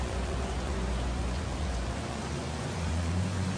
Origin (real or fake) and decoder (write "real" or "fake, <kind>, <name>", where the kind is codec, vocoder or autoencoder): fake, vocoder, Vocos